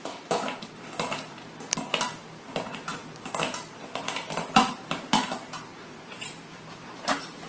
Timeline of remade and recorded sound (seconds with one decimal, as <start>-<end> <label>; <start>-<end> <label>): 0.0-3.0 remade; 3.0-4.7 recorded; 4.7-7.5 remade